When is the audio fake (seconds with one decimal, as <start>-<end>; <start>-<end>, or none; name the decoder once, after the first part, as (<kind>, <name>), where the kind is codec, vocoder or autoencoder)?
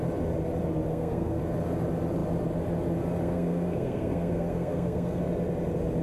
0.9-1.4 (codec, SNAC); 3.2-5.2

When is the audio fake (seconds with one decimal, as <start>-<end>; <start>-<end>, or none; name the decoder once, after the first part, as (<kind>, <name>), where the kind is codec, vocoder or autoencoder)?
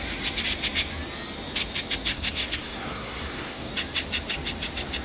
2.1-3.7 (codec, SNAC)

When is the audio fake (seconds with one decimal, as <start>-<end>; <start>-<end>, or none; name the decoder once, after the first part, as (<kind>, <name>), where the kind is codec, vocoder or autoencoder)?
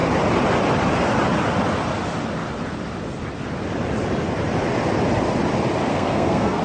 5.9-6.6 (codec, SNAC)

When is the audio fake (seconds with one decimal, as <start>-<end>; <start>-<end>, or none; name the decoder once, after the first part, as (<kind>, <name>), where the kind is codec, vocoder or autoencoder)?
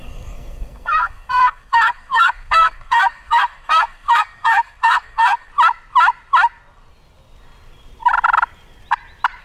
0.0-5.5 (codec, SNAC)